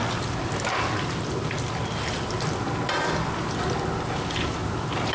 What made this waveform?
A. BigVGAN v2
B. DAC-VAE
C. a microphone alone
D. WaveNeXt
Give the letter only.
A